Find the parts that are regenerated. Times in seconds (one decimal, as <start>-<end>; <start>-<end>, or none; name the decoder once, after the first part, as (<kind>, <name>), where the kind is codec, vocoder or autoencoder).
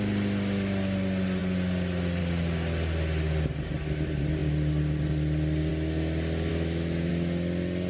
6.5-7.1 (autoencoder, DAC-VAE)